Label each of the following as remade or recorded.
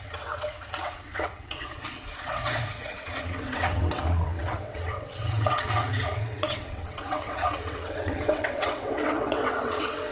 remade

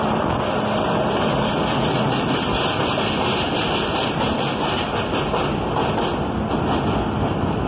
recorded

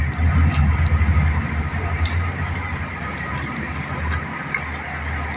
recorded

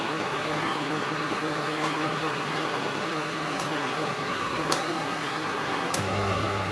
remade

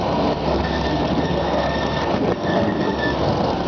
remade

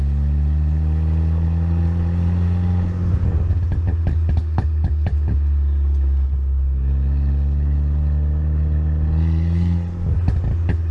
recorded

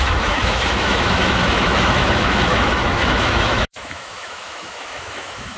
remade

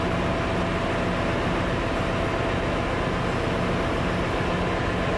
recorded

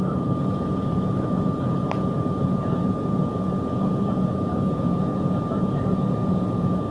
remade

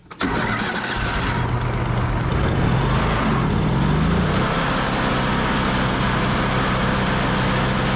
recorded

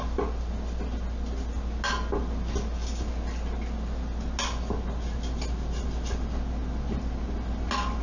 recorded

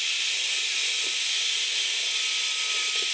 recorded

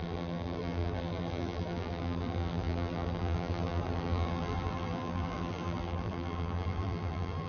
remade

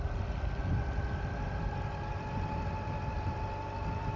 recorded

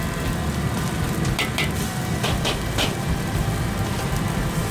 recorded